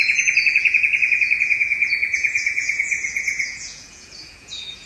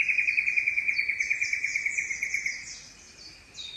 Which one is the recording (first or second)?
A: second